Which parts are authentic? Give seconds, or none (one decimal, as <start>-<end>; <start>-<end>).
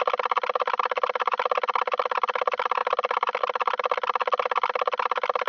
0.0-5.5